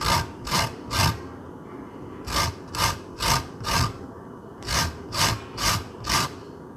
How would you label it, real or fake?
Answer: real